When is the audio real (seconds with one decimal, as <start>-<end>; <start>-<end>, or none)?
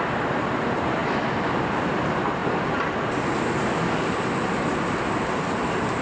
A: 0.0-6.0